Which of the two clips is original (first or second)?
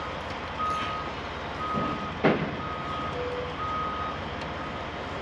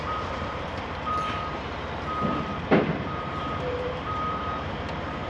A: first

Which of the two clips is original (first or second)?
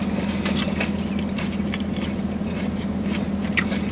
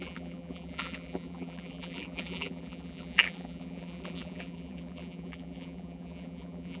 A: first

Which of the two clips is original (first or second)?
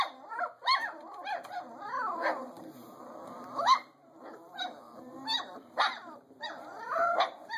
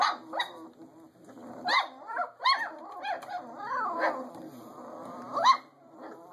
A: second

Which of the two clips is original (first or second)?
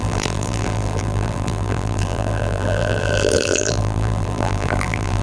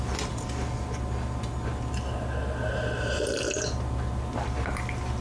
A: second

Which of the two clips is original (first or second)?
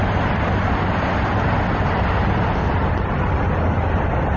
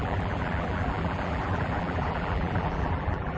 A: first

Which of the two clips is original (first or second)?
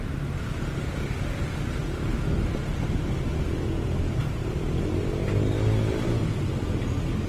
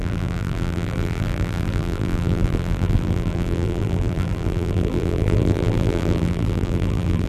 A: first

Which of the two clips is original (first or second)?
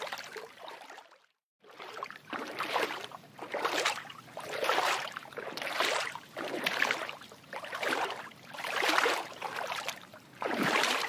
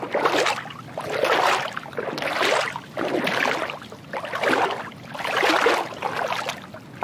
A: second